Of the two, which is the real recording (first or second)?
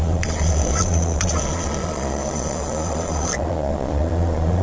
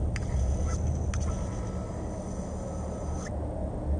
second